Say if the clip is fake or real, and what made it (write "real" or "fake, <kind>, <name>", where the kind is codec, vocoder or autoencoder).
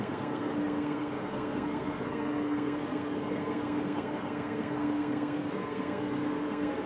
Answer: fake, codec, SNAC